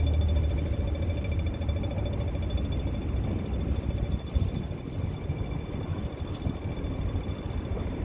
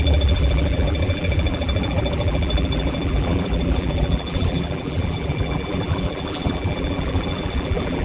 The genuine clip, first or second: first